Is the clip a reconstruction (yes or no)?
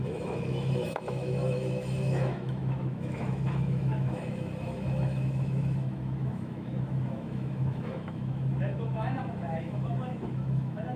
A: yes